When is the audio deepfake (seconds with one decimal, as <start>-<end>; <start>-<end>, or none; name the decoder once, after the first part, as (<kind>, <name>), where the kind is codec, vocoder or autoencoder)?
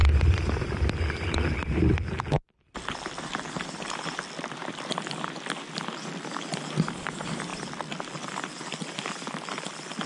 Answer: 2.6-7.5 (vocoder, BigVGAN v2); 8.2-10.1